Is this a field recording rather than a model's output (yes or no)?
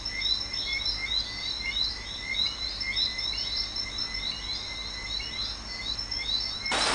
yes